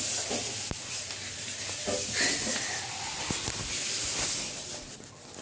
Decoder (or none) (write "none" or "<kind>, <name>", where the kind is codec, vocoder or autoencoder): none